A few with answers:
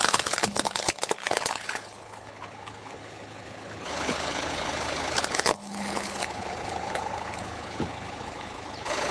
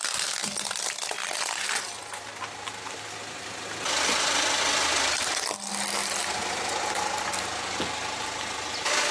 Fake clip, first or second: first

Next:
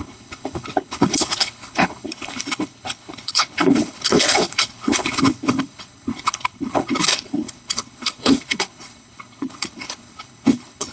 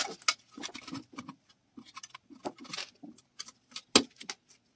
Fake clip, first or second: first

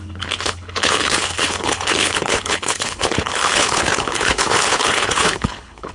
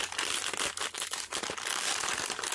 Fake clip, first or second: first